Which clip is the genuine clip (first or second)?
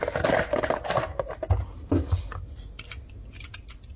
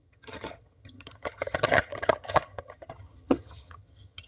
first